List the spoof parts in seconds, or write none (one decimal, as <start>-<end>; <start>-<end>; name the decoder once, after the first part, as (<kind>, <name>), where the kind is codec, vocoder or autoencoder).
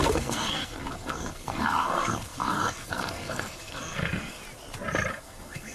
0.0-4.4 (codec, SNAC); 5.1-5.7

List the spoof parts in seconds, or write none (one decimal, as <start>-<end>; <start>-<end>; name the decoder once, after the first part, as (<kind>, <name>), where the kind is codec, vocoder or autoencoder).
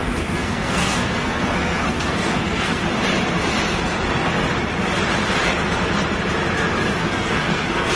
0.0-2.8 (codec, SNAC); 7.0-8.0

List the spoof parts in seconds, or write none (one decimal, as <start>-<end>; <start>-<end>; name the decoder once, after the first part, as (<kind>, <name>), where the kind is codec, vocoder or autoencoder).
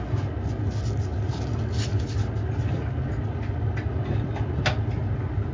none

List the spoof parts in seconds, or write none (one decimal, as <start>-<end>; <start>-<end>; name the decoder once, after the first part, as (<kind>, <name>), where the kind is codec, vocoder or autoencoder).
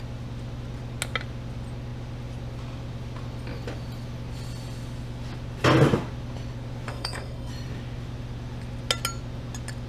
6.9-7.5 (codec, SNAC)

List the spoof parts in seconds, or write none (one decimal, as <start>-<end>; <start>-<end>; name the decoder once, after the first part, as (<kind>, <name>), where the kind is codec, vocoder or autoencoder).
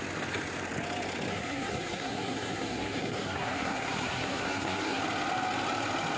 1.3-5.0 (codec, SNAC)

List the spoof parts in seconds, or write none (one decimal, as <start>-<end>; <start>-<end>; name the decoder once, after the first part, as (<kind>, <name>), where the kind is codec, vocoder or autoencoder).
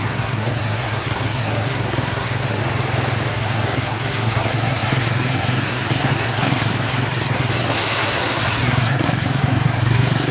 0.0-2.6 (codec, SNAC); 3.3-10.3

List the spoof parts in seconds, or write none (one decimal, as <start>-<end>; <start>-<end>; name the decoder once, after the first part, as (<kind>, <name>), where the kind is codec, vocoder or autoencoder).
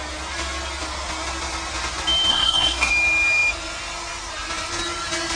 2.3-2.9 (codec, SNAC)